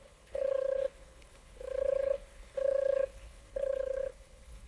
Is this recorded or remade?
remade